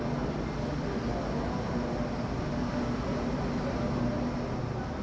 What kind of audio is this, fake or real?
real